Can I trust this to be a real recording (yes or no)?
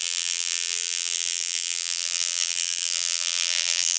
no